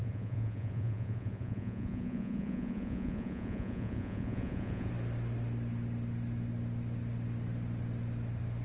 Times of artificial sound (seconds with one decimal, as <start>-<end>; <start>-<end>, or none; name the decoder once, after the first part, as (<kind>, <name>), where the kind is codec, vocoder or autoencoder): 0.0-4.9 (vocoder, Vocos)

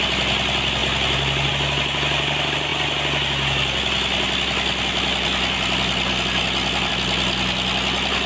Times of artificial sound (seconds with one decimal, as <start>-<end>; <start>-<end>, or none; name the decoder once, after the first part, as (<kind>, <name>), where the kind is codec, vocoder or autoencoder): none

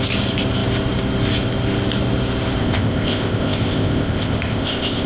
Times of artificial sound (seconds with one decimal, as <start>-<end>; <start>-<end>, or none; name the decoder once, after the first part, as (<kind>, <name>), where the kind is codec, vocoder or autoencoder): 2.6-5.1 (codec, ZipCodec)

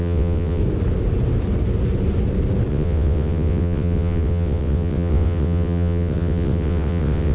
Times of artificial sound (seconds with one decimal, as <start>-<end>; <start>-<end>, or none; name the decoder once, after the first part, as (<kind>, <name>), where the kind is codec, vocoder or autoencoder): 0.0-0.6 (vocoder, WaveNeXt); 2.7-7.3

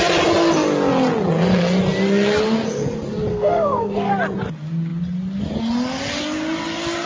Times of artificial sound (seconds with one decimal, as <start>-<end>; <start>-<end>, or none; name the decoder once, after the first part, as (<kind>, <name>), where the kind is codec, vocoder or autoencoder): 3.3-4.1 (codec, SNAC)

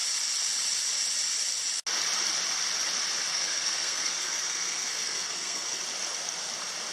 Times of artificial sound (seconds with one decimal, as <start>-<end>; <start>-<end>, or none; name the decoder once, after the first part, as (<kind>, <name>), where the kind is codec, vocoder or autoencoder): 3.3-5.8 (codec, SNAC)